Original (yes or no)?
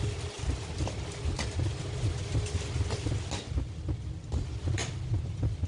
yes